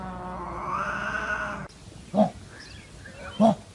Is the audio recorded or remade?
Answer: recorded